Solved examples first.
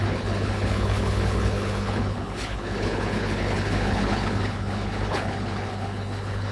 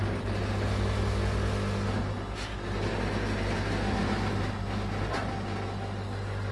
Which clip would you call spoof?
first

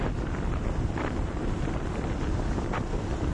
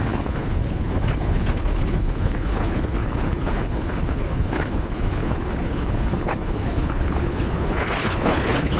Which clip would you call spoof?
second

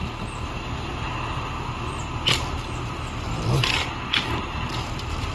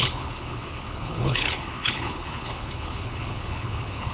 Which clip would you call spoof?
second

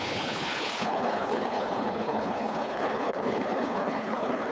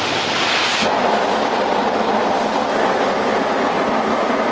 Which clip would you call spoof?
first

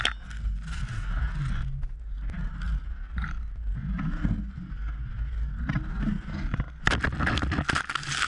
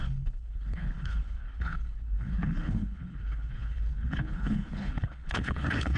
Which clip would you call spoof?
second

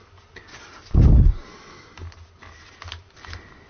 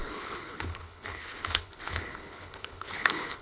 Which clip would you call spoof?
second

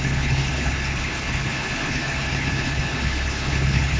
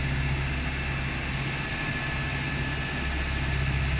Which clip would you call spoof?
first